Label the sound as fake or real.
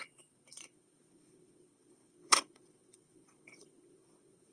fake